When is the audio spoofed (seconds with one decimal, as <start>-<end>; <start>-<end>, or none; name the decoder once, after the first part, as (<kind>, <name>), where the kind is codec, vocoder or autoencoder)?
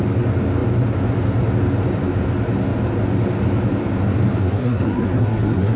4.4-5.8 (codec, SNAC)